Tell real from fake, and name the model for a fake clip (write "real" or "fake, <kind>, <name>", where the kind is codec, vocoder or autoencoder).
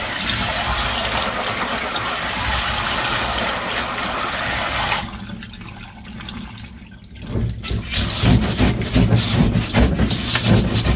real